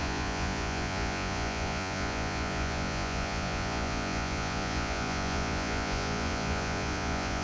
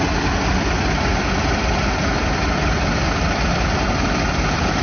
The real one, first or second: second